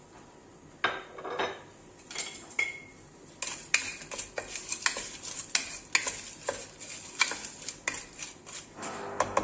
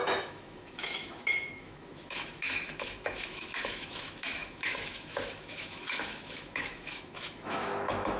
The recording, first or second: first